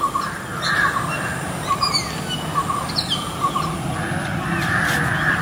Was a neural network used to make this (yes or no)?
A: no